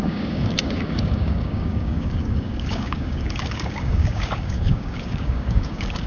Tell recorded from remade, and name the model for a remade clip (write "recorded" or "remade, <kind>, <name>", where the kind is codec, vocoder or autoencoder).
remade, codec, DAC